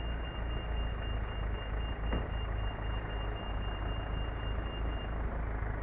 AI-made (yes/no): no